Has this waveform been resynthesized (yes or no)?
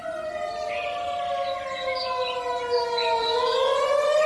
no